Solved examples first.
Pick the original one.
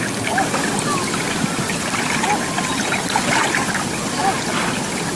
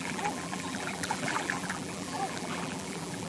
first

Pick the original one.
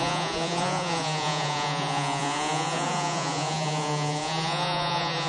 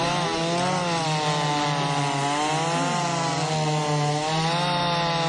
second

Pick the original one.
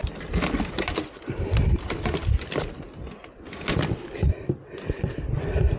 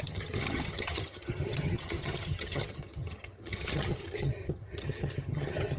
first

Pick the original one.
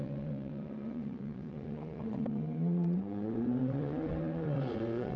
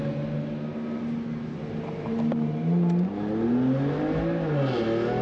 second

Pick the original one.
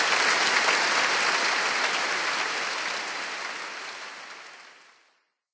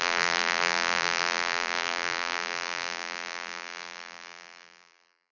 first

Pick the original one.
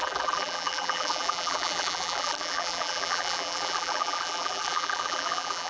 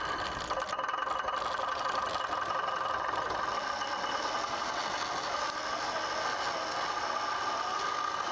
second